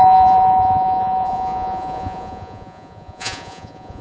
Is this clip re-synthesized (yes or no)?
yes